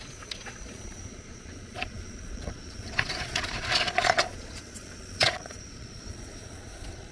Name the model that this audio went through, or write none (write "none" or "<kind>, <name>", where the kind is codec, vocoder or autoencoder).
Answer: vocoder, Vocos